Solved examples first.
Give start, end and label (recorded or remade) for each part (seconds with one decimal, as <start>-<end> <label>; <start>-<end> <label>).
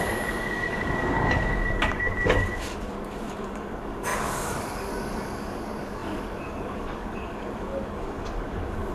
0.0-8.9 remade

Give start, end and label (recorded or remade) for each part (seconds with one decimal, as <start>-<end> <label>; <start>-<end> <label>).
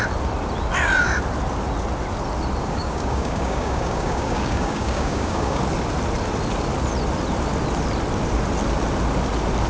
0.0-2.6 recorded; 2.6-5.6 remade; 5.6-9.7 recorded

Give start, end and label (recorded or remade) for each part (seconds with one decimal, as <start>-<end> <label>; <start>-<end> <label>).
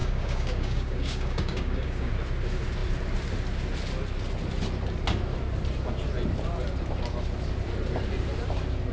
0.0-2.1 remade; 2.1-8.9 recorded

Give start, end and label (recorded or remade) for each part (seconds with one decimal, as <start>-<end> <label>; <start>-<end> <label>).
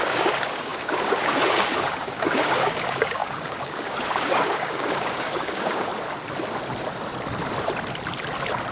0.0-5.9 remade; 5.9-8.7 recorded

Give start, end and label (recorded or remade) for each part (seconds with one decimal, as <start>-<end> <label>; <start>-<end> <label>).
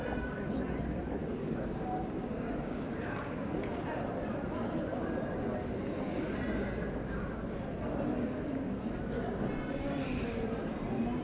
0.0-1.2 recorded; 1.2-3.5 remade; 3.5-11.2 recorded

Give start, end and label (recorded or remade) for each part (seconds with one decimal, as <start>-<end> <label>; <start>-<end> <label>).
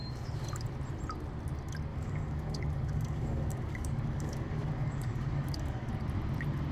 0.0-1.9 recorded; 1.9-5.9 remade; 5.9-6.7 recorded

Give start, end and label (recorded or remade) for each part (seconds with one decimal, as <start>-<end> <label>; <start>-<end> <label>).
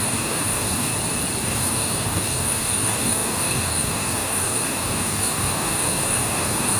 0.0-0.9 remade; 0.9-1.4 recorded; 1.4-6.8 remade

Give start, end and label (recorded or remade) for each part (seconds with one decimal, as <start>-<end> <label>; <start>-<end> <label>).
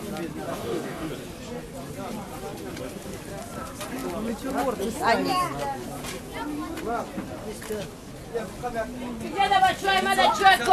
0.0-0.5 recorded; 0.5-1.1 remade; 1.1-10.7 recorded